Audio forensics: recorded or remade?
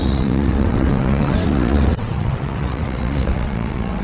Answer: remade